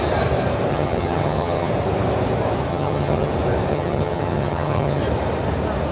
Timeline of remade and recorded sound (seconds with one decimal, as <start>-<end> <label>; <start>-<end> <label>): 0.0-0.7 recorded; 0.7-1.7 remade; 1.7-2.7 recorded; 2.7-3.3 remade; 3.3-3.7 recorded; 3.7-5.0 remade; 5.0-5.9 recorded